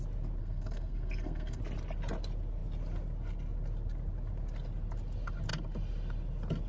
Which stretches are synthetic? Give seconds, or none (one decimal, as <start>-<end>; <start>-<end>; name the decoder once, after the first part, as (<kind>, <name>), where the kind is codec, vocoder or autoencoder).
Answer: 0.4-1.6 (codec, SNAC)